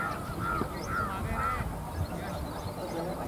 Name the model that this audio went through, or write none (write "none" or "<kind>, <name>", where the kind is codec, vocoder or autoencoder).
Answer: none